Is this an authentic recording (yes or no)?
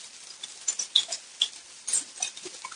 yes